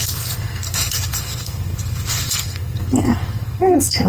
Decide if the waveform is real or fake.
fake